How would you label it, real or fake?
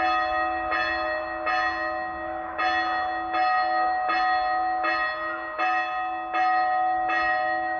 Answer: real